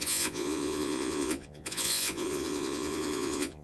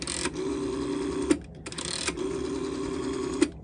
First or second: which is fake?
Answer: first